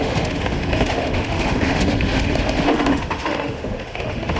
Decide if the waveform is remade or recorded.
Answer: remade